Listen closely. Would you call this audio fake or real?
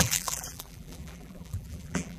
fake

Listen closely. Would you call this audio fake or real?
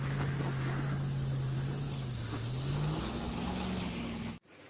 real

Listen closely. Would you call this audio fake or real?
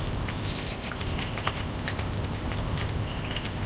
fake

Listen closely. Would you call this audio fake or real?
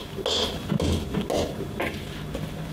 real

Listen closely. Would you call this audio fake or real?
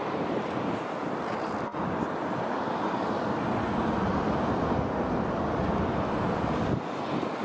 real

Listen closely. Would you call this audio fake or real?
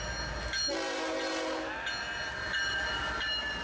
real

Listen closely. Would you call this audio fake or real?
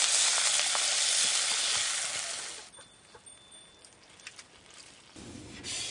real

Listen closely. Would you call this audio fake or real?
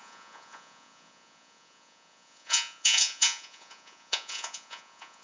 fake